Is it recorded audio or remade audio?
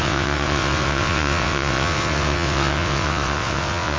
remade